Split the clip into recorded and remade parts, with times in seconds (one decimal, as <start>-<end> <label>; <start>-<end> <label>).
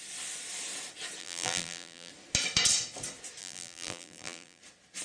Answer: 0.0-1.2 recorded; 1.2-2.1 remade; 2.1-3.4 recorded; 3.4-4.6 remade; 4.6-5.0 recorded